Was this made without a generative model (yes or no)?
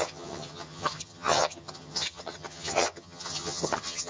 no